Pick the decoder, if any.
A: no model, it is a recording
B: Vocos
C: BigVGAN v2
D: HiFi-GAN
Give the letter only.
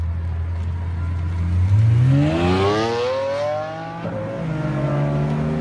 A